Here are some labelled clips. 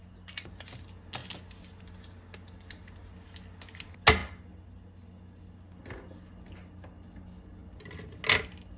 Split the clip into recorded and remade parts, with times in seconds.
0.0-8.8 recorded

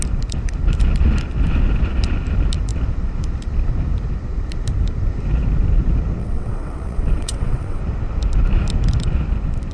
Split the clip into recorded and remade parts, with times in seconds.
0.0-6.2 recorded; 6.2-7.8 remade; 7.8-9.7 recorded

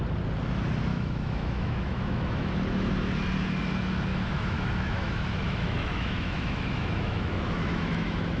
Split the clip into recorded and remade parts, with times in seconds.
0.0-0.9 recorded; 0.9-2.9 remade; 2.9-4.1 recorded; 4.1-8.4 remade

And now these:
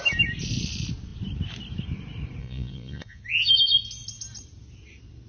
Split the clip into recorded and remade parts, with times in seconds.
0.0-2.4 recorded; 2.4-3.2 remade; 3.2-5.3 recorded